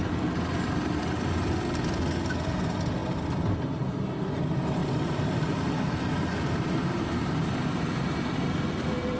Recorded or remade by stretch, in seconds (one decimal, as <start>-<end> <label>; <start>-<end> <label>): 0.0-4.8 recorded; 4.8-9.2 remade